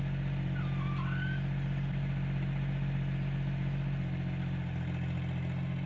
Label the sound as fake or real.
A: real